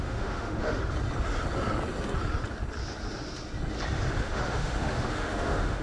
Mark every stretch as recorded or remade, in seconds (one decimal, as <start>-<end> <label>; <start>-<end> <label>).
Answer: 0.0-0.8 remade; 0.8-4.2 recorded; 4.2-5.8 remade